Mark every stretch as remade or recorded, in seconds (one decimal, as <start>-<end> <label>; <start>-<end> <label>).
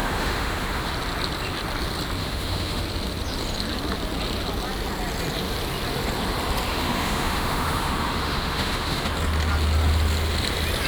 0.0-0.9 remade; 0.9-2.2 recorded; 2.2-2.8 remade; 2.8-6.7 recorded; 6.7-9.1 remade; 9.1-10.9 recorded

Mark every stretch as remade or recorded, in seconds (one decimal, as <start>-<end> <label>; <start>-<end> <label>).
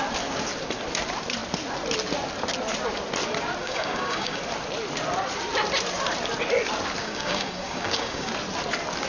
0.0-3.6 recorded; 3.6-4.4 remade; 4.4-7.0 recorded; 7.0-8.3 remade; 8.3-9.1 recorded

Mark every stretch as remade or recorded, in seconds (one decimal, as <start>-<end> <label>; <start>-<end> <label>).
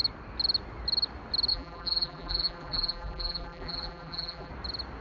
0.0-1.5 recorded; 1.5-4.5 remade; 4.5-5.0 recorded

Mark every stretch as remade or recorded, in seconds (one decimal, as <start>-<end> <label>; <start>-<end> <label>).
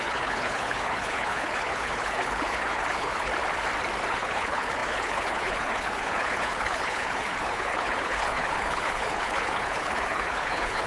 0.0-3.3 remade; 3.3-4.1 recorded; 4.1-10.9 remade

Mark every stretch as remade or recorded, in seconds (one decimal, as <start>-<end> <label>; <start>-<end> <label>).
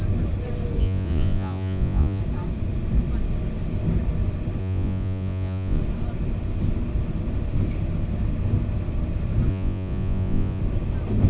0.0-0.8 recorded; 0.8-2.2 remade; 2.2-4.6 recorded; 4.6-5.8 remade; 5.8-9.5 recorded; 9.5-10.6 remade; 10.6-11.3 recorded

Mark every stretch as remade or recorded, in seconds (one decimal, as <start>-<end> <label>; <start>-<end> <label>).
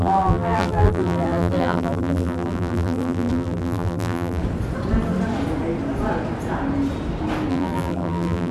0.0-4.4 remade; 4.4-7.5 recorded; 7.5-8.5 remade